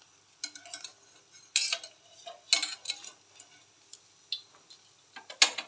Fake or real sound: real